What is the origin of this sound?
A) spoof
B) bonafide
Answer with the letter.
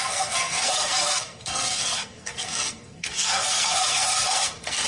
A